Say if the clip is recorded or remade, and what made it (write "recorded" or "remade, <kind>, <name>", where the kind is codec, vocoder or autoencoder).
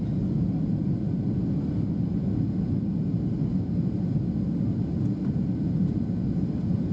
recorded